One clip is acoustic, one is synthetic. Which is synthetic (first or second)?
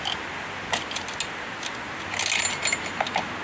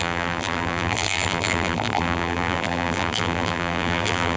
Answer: second